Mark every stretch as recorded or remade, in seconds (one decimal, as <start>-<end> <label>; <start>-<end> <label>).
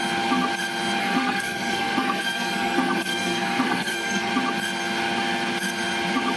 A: 0.0-1.0 recorded; 1.0-4.3 remade; 4.3-6.4 recorded